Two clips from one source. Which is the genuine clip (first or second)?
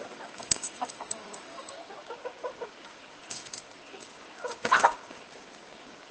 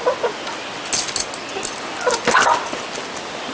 second